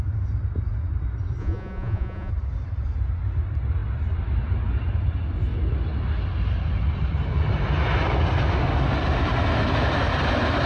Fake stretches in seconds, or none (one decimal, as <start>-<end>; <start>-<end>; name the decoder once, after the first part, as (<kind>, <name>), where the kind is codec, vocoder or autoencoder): 1.4-2.3 (vocoder, Vocos)